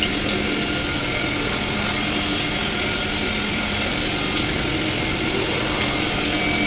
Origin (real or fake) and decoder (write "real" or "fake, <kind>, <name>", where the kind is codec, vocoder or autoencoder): real